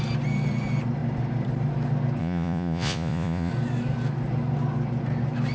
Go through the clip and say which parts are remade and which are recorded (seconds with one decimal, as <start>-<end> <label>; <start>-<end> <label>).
0.0-2.2 recorded; 2.2-3.5 remade; 3.5-5.5 recorded